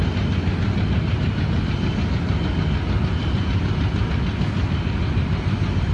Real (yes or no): yes